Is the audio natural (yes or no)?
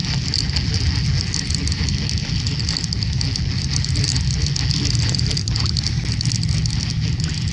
yes